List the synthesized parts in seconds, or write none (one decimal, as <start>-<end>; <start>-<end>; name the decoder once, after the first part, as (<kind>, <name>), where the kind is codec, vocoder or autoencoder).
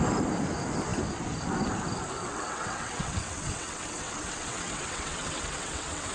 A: 2.2-6.1 (vocoder, WaveNeXt)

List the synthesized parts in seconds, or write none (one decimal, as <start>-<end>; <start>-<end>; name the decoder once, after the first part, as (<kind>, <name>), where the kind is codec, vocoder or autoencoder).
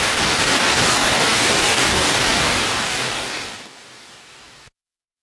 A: 0.0-5.2 (codec, DAC)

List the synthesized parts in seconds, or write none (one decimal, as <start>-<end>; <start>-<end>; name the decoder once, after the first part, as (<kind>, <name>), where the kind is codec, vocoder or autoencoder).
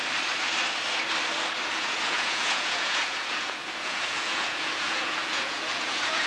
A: 1.7-6.3 (vocoder, Vocos)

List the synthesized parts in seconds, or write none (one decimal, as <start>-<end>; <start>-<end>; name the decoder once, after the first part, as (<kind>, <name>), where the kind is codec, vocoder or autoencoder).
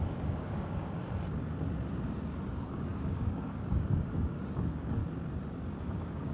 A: 0.0-1.0 (codec, DAC); 2.5-5.0; 5.8-6.3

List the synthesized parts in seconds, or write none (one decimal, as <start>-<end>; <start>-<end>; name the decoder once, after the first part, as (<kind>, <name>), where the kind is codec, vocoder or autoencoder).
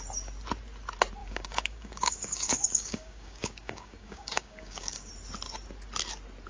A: 1.2-5.1 (codec, DAC)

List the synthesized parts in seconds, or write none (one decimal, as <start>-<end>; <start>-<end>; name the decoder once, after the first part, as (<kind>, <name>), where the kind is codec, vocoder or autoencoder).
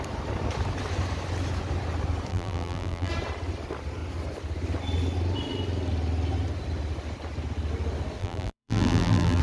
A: 2.3-3.1 (vocoder, BigVGAN v2); 8.2-9.4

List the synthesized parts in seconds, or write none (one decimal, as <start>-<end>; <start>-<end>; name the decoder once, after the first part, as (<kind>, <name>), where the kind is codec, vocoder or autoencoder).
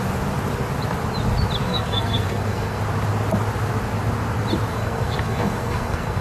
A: 1.7-2.8 (codec, SNAC); 4.7-6.2